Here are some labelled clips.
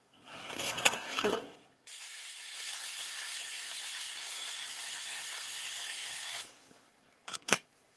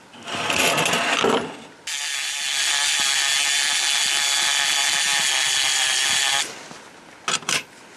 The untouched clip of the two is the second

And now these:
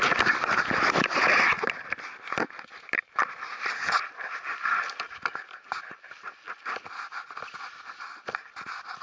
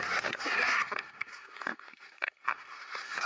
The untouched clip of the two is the first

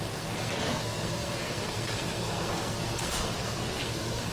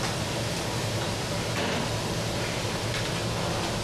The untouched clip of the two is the second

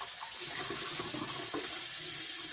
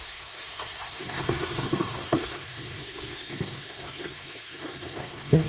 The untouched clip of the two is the first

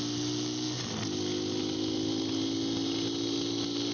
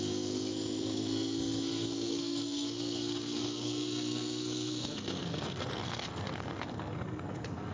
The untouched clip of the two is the first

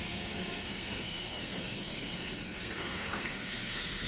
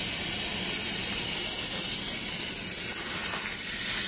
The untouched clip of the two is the second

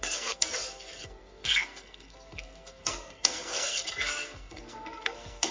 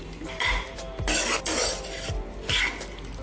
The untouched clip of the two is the second